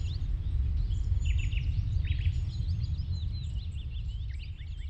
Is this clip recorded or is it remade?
recorded